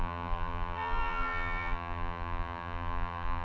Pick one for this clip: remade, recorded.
remade